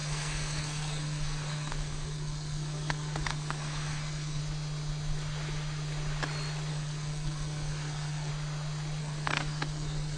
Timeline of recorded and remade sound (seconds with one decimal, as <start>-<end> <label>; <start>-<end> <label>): 0.0-4.4 remade; 4.4-6.7 recorded; 6.7-8.3 remade; 8.3-9.0 recorded; 9.0-10.2 remade